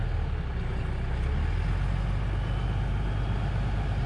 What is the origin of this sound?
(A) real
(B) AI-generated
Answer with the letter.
A